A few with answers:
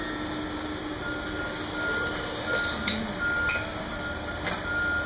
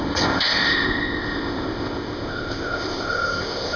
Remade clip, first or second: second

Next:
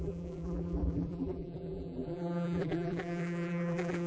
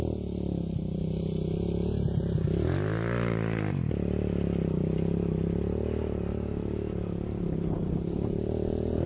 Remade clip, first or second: first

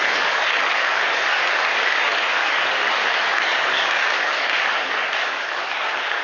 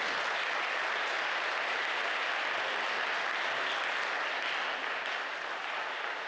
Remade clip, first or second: first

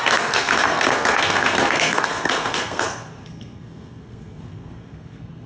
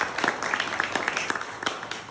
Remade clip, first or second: first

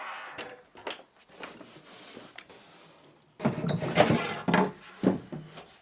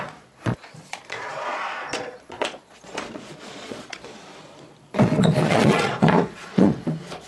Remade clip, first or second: second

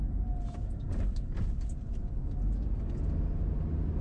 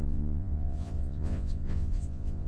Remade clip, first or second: second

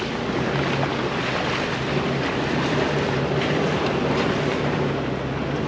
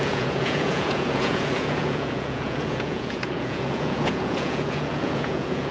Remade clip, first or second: second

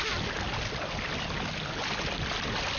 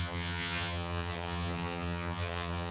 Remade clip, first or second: second